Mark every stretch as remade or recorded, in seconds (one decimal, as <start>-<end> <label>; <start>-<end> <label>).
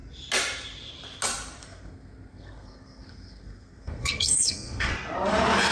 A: 0.0-1.6 recorded; 1.6-4.9 remade; 4.9-5.7 recorded